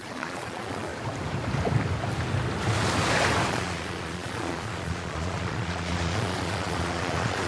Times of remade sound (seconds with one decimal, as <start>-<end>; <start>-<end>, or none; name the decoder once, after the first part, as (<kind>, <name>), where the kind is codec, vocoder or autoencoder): 0.0-0.9 (vocoder, Vocos); 3.5-7.5